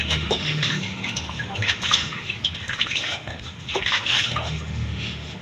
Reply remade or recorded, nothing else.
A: remade